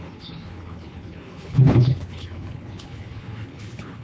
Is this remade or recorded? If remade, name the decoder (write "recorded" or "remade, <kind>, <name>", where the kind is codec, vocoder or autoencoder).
remade, codec, HILCodec